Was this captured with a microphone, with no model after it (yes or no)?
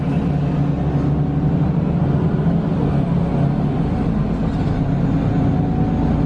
yes